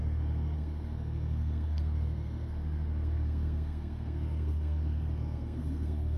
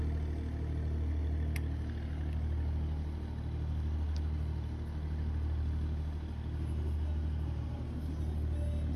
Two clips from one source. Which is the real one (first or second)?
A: second